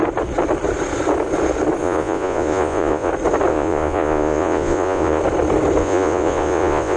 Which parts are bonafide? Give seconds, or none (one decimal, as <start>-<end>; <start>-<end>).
0.0-1.8; 3.1-3.5; 5.2-5.8